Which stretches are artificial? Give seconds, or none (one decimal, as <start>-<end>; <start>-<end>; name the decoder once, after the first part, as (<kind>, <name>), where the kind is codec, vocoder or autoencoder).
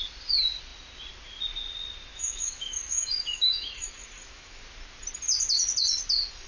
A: 2.1-4.6 (autoencoder, DAC-VAE)